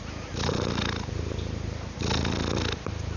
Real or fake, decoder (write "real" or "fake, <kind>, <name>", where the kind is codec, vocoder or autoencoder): real